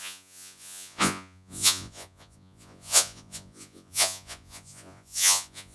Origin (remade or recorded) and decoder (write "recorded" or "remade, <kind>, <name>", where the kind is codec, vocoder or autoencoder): remade, vocoder, Vocos